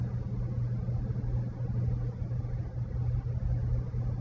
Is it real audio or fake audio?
real